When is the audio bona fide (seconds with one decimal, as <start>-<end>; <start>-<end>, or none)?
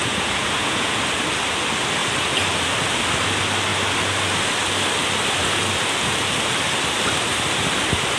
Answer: 1.0-8.2